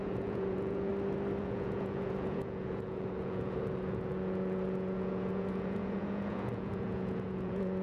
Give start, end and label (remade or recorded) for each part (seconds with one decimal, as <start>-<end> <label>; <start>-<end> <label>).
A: 0.0-0.9 remade; 0.9-1.4 recorded; 1.4-7.8 remade